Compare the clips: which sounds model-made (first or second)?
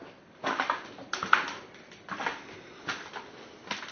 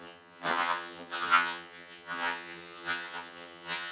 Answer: second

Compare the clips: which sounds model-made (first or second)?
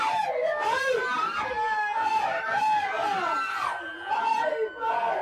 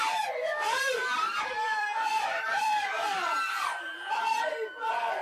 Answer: second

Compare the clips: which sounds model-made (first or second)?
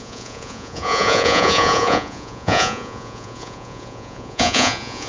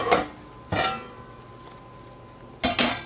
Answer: first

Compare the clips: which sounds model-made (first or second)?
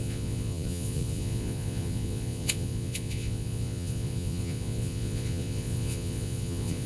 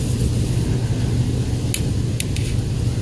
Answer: first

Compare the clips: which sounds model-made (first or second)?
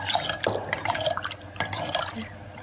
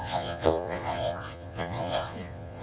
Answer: second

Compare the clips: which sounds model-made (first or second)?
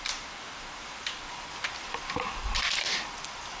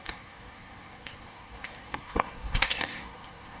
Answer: second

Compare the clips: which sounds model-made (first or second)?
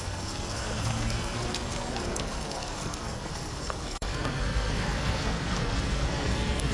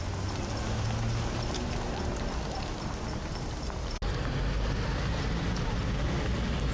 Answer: first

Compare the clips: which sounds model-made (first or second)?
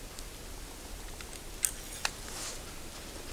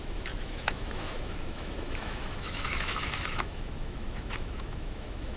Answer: second